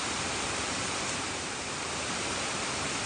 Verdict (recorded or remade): remade